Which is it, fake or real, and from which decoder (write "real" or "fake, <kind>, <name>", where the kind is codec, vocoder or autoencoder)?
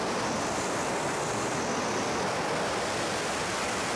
real